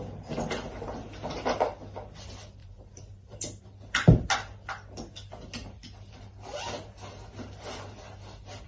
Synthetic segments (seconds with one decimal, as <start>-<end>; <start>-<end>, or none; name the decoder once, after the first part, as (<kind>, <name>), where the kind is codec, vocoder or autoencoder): 2.6-3.6 (vocoder, BigVGAN v2)